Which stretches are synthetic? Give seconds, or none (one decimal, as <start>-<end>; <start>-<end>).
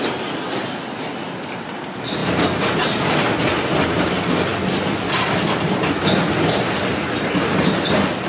none